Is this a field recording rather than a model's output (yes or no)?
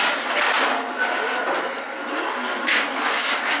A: yes